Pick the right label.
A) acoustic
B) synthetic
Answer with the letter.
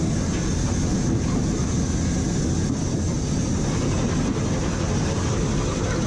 A